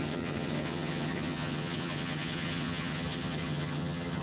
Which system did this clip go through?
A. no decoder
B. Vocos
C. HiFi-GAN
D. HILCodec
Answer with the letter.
C